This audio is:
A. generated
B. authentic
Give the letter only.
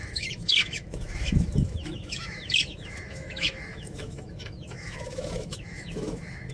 A